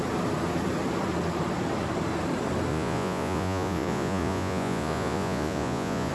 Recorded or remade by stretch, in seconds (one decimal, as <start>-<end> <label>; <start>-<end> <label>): 0.0-2.7 recorded; 2.7-6.1 remade